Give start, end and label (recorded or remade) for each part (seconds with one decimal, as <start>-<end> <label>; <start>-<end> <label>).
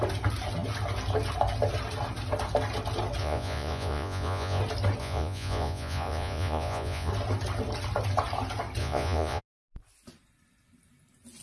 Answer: 0.0-3.2 recorded; 3.2-4.6 remade; 4.6-5.0 recorded; 5.0-7.1 remade; 7.1-8.8 recorded; 8.8-9.4 remade; 9.4-11.4 recorded